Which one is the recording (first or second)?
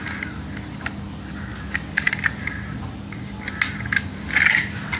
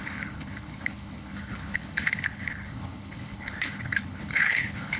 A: first